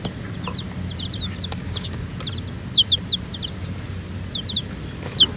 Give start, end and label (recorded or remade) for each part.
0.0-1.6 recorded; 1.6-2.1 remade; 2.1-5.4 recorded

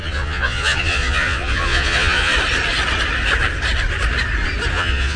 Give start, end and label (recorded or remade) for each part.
0.0-2.3 remade; 2.3-4.7 recorded; 4.7-5.2 remade

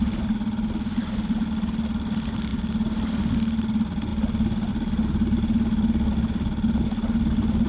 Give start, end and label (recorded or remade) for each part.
0.0-7.7 recorded

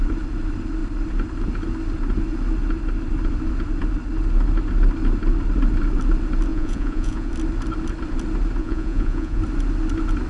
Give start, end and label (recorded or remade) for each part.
0.0-6.5 recorded; 6.5-7.3 remade; 7.3-8.6 recorded; 8.6-9.4 remade; 9.4-10.3 recorded